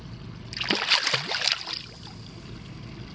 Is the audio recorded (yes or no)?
yes